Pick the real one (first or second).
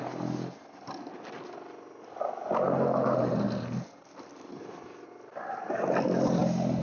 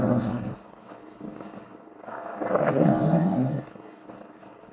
first